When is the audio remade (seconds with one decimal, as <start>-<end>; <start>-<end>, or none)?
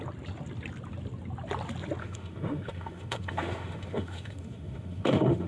2.0-5.5